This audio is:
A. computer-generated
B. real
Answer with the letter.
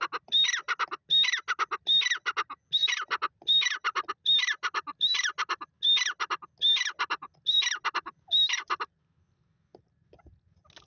B